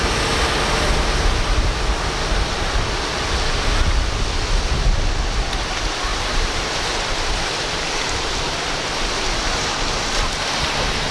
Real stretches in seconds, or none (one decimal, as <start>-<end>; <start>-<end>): 0.0-6.1; 8.4-11.1